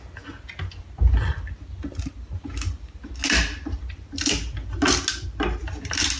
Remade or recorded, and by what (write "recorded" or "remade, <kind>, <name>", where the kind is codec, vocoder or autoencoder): recorded